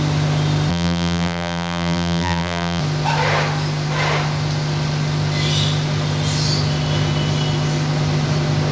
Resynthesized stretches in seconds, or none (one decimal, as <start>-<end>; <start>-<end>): 0.7-2.8